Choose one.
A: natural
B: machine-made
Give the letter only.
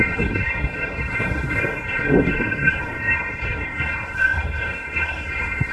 B